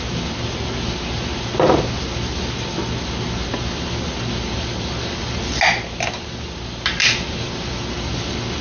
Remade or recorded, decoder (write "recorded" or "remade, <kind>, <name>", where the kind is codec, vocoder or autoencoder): recorded